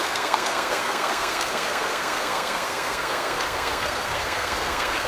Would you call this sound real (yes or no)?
no